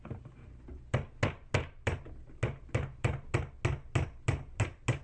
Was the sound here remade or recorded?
recorded